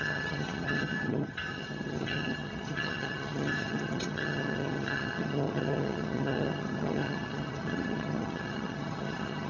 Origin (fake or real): fake